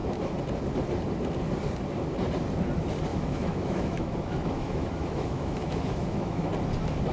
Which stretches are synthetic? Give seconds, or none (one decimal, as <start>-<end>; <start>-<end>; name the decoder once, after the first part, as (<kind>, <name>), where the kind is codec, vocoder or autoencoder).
3.1-6.5 (autoencoder, DAC-VAE)